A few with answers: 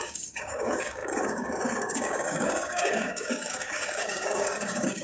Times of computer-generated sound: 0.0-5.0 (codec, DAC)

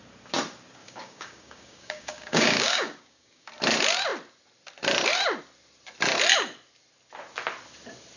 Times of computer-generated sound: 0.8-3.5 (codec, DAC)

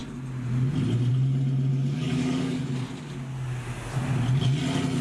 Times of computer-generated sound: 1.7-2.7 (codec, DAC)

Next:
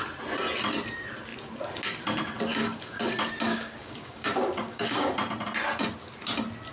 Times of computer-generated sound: 2.5-3.0 (codec, DAC); 3.5-5.1